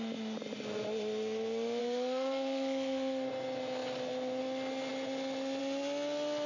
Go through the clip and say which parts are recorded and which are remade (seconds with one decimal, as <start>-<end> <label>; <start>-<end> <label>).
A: 0.0-1.8 recorded; 1.8-3.3 remade; 3.3-6.5 recorded